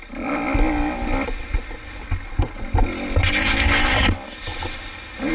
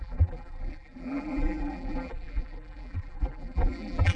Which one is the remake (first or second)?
second